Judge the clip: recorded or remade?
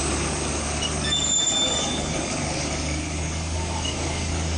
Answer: remade